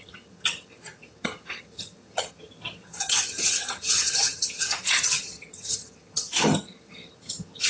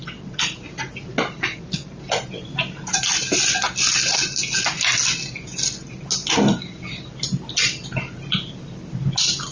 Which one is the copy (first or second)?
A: first